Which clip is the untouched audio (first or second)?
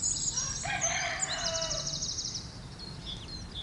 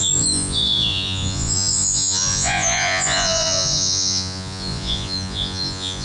first